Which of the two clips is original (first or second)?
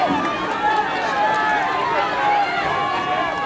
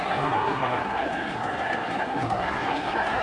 first